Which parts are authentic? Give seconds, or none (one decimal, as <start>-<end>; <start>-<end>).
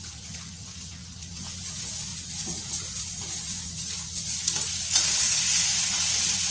none